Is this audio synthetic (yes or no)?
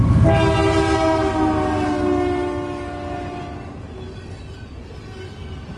no